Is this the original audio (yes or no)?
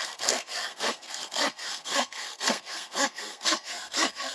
no